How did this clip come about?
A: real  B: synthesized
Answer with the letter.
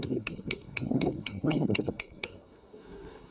B